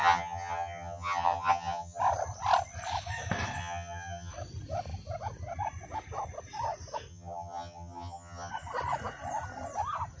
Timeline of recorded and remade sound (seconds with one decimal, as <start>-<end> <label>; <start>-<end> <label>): 0.0-2.0 remade; 2.0-3.6 recorded; 3.6-4.3 remade; 4.3-7.1 recorded; 7.1-8.5 remade; 8.5-10.2 recorded